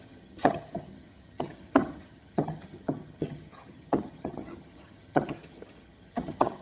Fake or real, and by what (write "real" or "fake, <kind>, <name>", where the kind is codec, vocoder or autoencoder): fake, vocoder, HiFi-GAN